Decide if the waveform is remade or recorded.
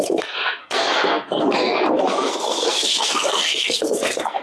remade